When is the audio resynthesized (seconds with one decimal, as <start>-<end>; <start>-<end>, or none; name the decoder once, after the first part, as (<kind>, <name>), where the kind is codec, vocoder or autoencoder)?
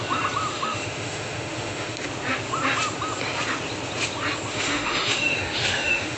0.5-2.1 (autoencoder, DAC-VAE); 4.5-6.2